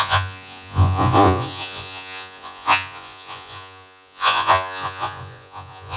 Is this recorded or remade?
remade